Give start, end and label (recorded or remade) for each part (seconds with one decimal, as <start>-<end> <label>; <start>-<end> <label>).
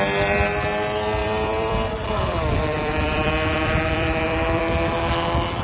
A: 0.0-1.2 recorded; 1.2-4.6 remade; 4.6-5.6 recorded